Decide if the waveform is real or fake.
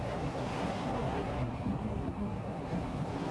fake